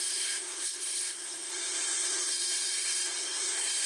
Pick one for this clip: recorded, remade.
remade